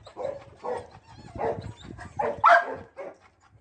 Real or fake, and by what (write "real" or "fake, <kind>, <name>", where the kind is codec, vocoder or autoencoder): real